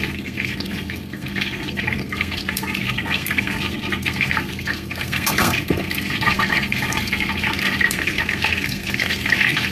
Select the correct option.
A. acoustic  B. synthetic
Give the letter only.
B